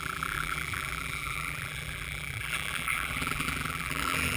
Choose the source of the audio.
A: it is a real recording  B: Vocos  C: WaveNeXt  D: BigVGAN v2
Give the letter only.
D